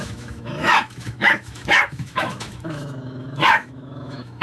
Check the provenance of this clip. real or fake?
fake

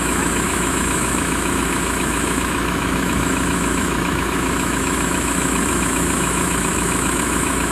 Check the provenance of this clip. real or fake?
fake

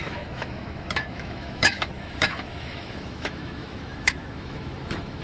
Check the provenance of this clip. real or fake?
fake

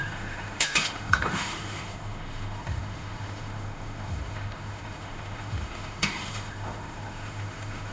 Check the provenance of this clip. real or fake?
fake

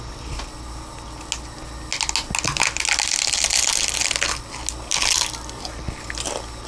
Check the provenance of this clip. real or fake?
real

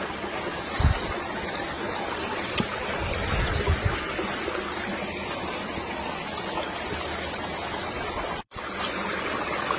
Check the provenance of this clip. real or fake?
real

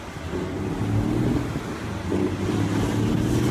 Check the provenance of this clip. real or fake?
real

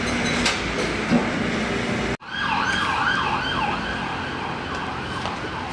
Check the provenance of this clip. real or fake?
real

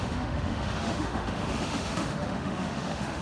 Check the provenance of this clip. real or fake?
fake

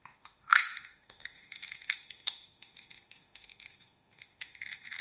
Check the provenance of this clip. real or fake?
fake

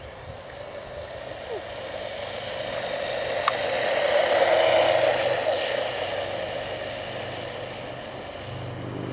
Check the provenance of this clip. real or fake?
real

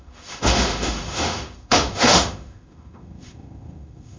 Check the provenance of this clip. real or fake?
fake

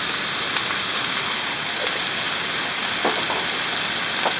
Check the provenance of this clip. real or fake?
real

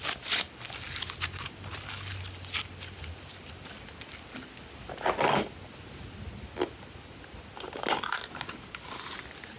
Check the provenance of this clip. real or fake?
real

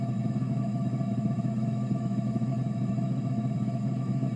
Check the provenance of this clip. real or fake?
fake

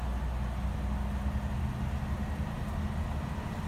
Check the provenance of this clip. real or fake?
real